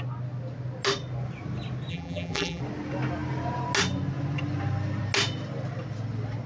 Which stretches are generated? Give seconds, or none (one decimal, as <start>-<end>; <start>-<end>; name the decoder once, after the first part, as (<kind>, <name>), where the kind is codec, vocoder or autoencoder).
1.9-2.6 (vocoder, BigVGAN v2)

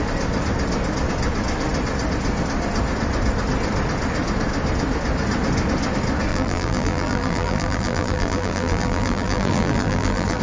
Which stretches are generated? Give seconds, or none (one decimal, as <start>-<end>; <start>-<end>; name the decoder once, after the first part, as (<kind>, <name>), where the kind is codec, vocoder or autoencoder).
6.3-10.4 (vocoder, BigVGAN v2)

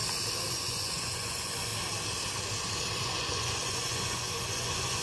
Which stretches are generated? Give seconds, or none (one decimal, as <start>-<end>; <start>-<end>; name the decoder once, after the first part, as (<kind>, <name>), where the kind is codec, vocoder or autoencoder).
0.5-1.7 (vocoder, Vocos); 3.0-5.0